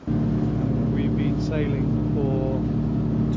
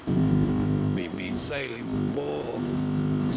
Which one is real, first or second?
first